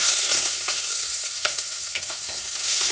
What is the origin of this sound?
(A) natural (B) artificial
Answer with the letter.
B